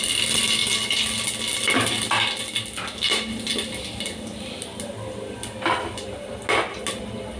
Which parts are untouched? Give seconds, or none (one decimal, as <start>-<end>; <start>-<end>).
0.0-7.4